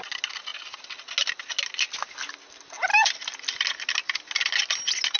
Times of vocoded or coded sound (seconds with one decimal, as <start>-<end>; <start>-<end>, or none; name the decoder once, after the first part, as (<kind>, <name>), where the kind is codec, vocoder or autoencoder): none